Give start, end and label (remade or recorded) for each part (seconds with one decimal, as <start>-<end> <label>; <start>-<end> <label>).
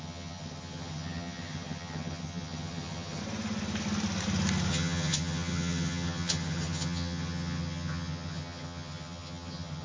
0.0-3.2 remade; 3.2-4.7 recorded; 4.7-9.8 remade